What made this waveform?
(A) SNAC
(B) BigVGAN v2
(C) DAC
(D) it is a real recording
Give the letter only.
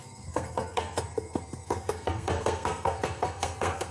A